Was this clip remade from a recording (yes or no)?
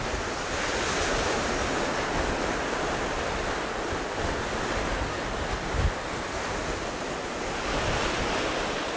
no